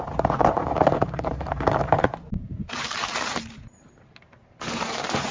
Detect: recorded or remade remade